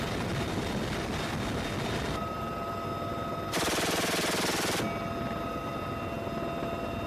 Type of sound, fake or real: real